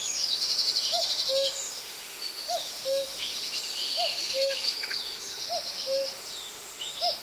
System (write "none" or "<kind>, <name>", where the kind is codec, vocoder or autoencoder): autoencoder, DAC-VAE